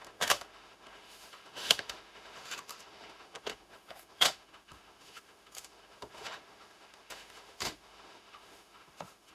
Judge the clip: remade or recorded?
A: remade